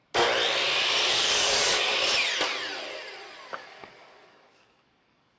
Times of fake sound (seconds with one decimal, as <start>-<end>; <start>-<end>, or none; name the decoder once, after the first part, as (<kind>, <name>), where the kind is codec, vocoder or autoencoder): 1.1-1.9 (codec, DAC); 3.5-5.4